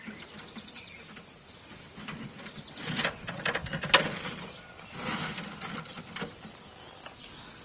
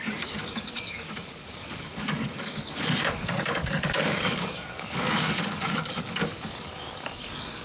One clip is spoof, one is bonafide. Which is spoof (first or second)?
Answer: second